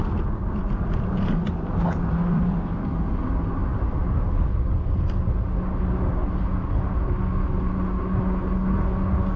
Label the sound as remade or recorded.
recorded